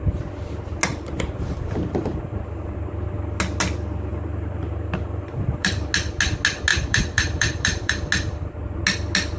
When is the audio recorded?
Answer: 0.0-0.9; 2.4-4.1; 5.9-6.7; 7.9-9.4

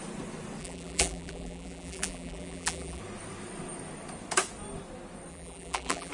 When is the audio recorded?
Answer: 0.0-0.6; 3.0-5.3

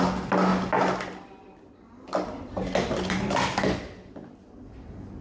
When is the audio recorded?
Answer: 0.0-5.2

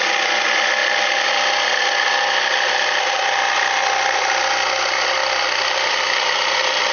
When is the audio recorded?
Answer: 0.0-0.8; 3.2-5.2; 5.9-6.9

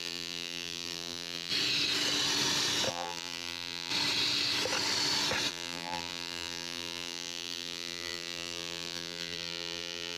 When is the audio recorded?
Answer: 1.5-2.9; 3.9-5.5